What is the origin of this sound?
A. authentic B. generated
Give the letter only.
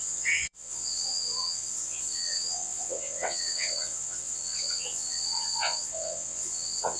B